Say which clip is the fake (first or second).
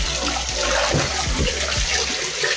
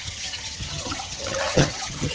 second